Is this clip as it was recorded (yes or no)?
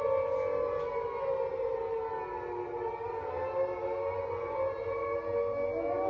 yes